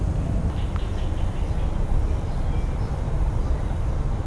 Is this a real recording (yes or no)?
no